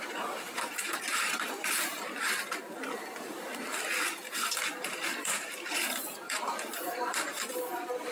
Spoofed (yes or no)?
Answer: yes